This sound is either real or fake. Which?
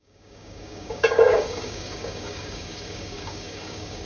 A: fake